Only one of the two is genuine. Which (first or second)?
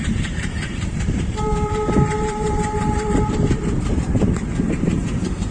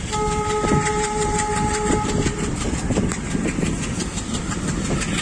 second